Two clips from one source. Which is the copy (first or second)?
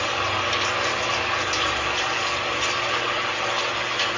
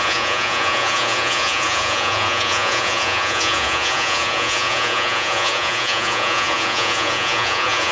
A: second